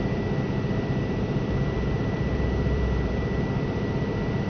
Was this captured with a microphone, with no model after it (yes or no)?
no